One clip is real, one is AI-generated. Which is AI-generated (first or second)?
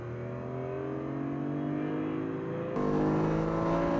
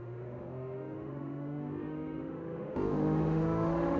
second